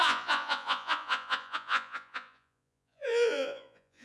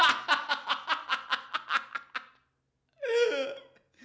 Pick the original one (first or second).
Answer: second